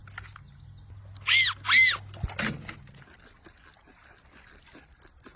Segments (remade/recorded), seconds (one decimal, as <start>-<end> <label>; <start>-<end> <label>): 0.0-5.4 recorded